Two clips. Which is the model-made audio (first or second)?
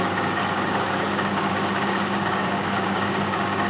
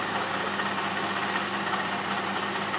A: first